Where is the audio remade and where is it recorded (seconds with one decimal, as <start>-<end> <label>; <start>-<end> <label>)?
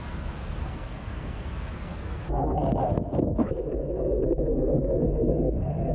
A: 0.0-5.9 remade